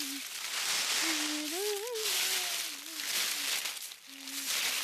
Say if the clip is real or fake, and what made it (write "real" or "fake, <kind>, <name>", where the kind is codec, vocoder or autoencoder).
real